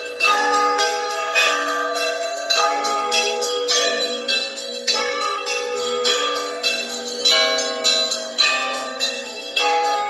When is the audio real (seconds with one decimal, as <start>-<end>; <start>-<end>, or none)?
7.2-8.1